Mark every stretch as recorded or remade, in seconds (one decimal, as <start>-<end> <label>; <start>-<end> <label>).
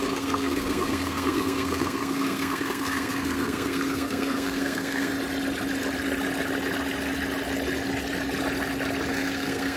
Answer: 0.0-5.1 remade; 5.1-9.1 recorded; 9.1-9.8 remade